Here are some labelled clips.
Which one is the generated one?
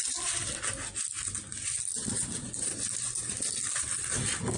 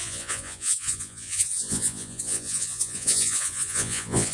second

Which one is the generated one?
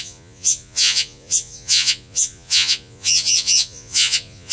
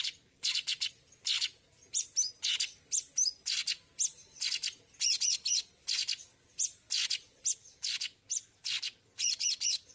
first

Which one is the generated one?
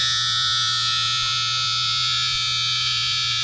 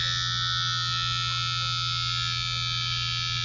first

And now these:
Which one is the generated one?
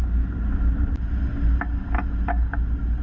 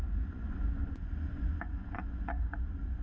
second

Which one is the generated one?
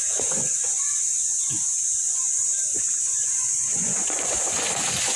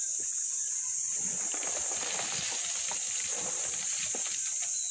first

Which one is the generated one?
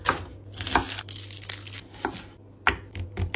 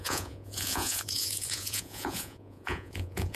second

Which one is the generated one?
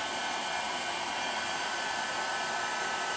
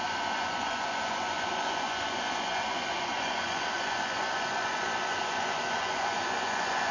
second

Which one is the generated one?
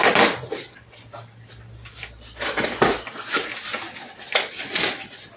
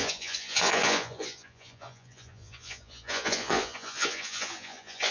second